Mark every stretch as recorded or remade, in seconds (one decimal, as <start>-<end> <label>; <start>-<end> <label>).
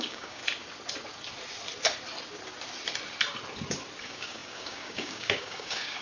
0.0-0.4 remade; 0.4-4.0 recorded; 4.0-6.0 remade